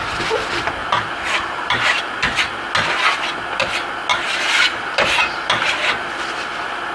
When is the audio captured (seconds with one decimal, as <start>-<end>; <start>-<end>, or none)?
0.0-0.8; 2.0-4.1; 5.3-6.9